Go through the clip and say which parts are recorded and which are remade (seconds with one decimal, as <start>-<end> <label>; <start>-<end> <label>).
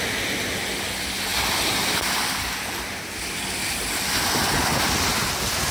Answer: 0.0-5.7 recorded